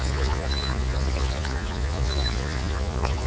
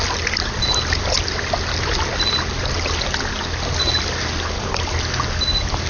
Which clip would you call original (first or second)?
second